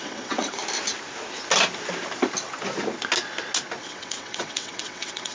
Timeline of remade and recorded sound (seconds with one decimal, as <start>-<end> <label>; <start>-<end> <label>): 0.0-0.6 remade; 0.6-3.8 recorded; 3.8-5.3 remade